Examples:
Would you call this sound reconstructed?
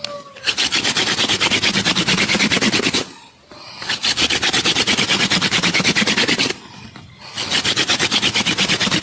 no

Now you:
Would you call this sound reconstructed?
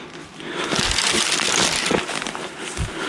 no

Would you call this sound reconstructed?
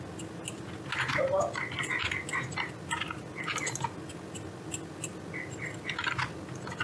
no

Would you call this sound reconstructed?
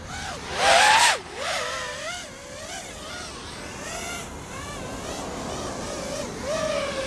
no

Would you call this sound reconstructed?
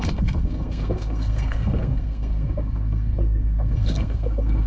yes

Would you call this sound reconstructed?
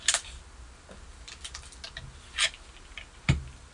no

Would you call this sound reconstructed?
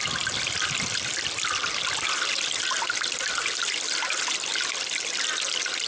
no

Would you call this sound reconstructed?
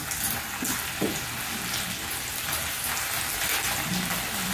no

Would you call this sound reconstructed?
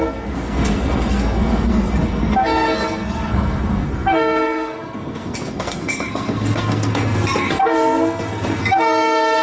yes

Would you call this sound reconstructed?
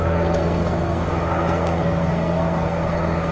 yes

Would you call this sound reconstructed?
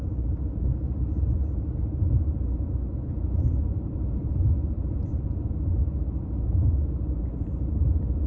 no